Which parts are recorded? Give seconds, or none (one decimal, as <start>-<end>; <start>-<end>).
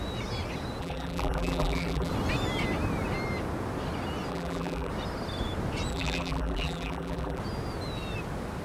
0.0-0.8; 2.1-4.3; 4.9-5.9; 7.4-8.6